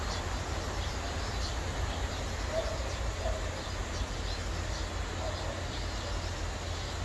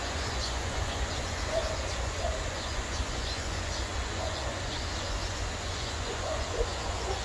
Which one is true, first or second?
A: first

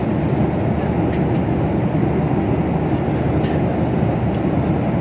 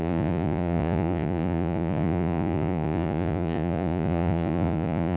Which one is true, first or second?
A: first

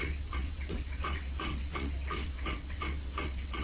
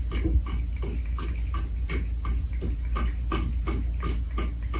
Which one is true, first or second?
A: second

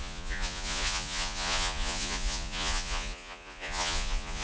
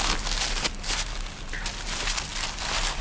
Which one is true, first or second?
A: second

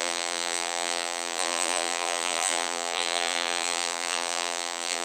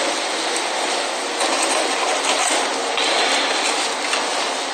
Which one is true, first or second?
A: second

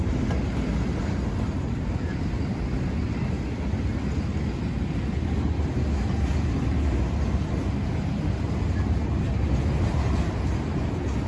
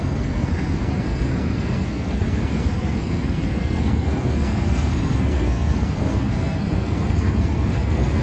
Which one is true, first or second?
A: first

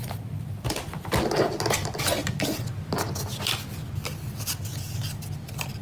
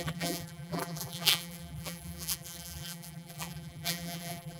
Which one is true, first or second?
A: first